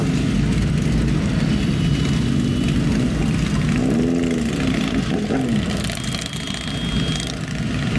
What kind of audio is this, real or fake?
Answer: real